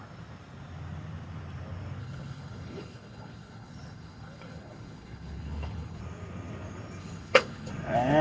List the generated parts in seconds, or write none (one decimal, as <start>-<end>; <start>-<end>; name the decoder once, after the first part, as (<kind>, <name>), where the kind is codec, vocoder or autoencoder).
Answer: 2.0-6.0 (codec, HILCodec); 7.0-7.7

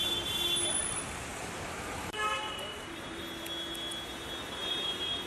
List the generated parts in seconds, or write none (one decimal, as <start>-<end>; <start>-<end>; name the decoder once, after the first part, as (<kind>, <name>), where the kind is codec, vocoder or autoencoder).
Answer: 1.3-3.4 (vocoder, BigVGAN v2); 4.6-5.3

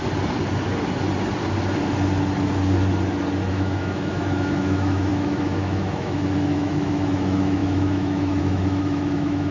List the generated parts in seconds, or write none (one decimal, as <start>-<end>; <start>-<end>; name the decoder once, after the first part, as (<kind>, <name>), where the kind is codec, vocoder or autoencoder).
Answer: 3.5-9.5 (autoencoder, DAC-VAE)

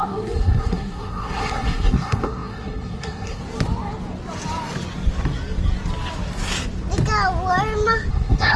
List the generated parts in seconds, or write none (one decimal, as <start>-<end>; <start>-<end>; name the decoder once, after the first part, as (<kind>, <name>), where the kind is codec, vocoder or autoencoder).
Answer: 0.0-3.4 (codec, SNAC); 8.1-8.6

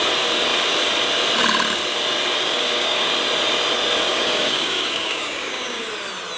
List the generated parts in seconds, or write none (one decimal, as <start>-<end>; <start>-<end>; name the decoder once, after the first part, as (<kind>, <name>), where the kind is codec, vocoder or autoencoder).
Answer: 2.4-3.1 (codec, DAC); 4.1-5.9

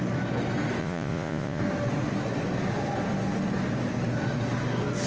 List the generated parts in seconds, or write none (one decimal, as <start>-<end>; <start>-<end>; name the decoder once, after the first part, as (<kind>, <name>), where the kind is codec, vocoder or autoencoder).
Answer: 0.8-1.6 (vocoder, Vocos)

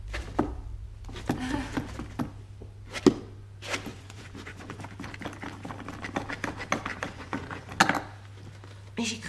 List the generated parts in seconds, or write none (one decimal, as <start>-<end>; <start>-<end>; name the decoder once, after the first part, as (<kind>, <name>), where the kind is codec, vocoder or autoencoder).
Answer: 3.9-4.8 (vocoder, Vocos); 6.9-7.7

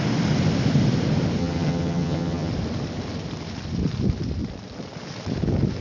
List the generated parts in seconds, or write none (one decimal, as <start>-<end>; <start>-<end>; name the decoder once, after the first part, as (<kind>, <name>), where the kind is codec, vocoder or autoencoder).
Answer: 1.4-2.5 (vocoder, HiFi-GAN)